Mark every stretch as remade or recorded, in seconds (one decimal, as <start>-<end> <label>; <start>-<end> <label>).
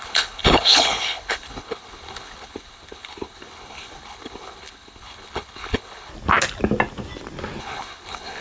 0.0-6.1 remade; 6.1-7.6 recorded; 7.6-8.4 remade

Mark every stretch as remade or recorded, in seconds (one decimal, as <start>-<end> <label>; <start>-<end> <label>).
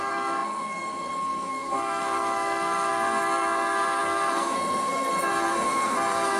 0.0-6.4 remade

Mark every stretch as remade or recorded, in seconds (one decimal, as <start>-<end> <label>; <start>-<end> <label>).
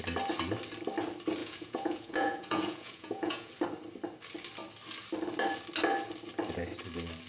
0.0-1.4 recorded; 1.4-3.5 remade; 3.5-7.3 recorded